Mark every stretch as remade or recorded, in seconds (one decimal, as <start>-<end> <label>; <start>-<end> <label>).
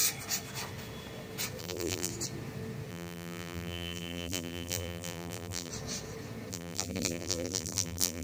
0.0-1.6 recorded; 1.6-2.1 remade; 2.1-2.9 recorded; 2.9-5.7 remade; 5.7-6.5 recorded; 6.5-8.2 remade